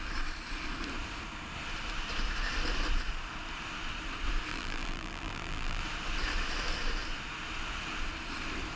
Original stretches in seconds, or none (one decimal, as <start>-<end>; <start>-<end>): 0.0-4.5; 5.8-8.8